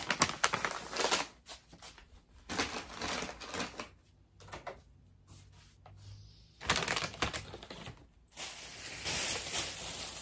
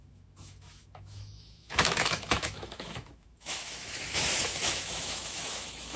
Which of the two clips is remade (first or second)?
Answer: second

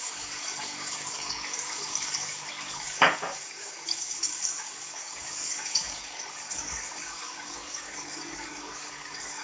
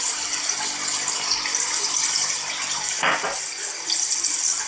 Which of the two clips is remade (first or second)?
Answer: first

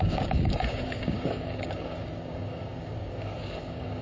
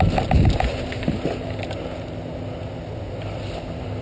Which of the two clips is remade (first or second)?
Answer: first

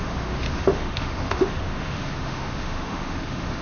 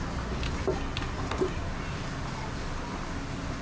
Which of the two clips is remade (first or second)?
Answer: first